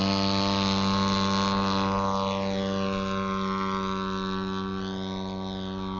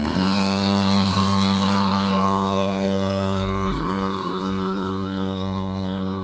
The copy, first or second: second